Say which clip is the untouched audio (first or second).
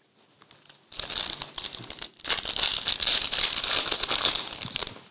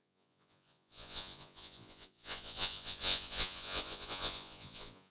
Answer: first